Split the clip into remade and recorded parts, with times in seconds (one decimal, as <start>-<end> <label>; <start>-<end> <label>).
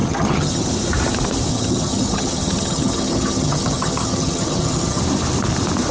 0.0-0.7 remade; 0.7-1.5 recorded; 1.5-5.0 remade; 5.0-5.9 recorded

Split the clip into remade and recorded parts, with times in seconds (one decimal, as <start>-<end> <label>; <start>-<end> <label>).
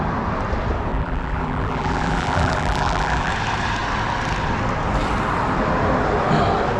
0.0-0.9 recorded; 0.9-3.3 remade; 3.3-6.8 recorded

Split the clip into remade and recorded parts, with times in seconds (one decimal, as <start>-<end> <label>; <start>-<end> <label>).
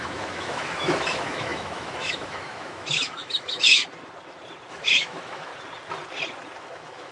0.0-3.8 remade; 3.8-4.7 recorded; 4.7-5.5 remade; 5.5-6.6 recorded; 6.6-7.1 remade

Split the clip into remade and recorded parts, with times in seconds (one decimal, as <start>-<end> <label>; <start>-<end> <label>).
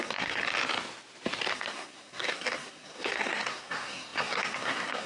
0.0-0.4 remade; 0.4-1.5 recorded; 1.5-5.1 remade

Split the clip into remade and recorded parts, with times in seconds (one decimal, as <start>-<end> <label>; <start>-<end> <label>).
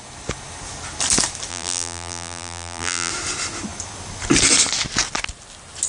0.0-1.5 recorded; 1.5-3.1 remade; 3.1-5.9 recorded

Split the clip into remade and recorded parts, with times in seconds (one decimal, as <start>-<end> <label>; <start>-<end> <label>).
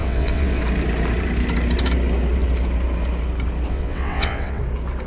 0.0-0.6 remade; 0.6-3.7 recorded; 3.7-4.6 remade; 4.6-5.1 recorded